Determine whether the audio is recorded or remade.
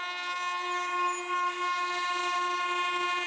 recorded